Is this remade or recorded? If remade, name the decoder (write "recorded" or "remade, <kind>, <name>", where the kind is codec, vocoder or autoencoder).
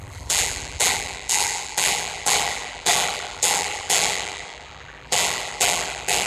remade, vocoder, BigVGAN v2